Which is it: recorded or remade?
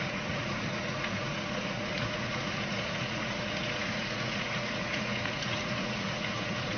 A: remade